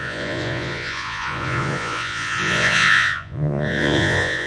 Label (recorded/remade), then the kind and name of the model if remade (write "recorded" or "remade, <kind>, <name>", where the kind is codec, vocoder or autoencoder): remade, vocoder, Vocos